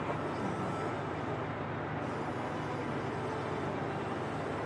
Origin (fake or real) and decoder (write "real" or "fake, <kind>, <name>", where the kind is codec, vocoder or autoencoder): real